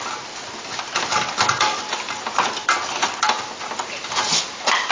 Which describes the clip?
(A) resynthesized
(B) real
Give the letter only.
B